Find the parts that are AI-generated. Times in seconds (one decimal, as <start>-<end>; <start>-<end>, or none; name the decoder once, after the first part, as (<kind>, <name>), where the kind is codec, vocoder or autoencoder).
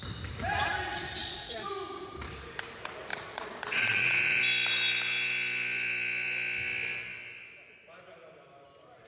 1.2-1.7 (vocoder, Vocos); 3.1-4.4